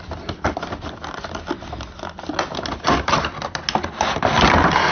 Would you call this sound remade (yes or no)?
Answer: no